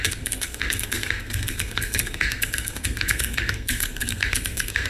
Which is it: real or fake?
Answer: fake